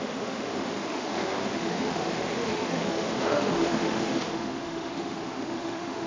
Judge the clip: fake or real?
fake